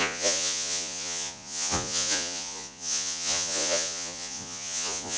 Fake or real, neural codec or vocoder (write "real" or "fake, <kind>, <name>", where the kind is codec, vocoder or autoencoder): fake, vocoder, Vocos